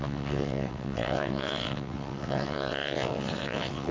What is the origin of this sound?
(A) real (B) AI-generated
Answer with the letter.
B